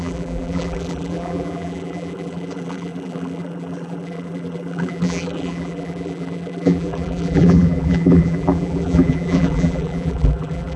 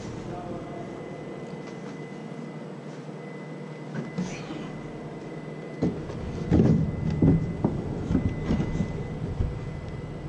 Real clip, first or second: second